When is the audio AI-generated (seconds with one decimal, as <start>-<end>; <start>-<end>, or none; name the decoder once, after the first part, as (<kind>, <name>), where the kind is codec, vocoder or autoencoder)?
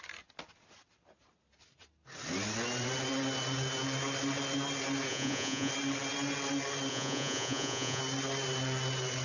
5.1-5.7 (vocoder, Vocos); 6.9-8.0